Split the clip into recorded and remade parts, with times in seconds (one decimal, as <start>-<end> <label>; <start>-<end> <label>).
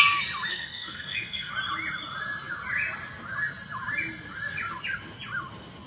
0.0-0.5 recorded; 0.5-1.5 remade; 1.5-5.9 recorded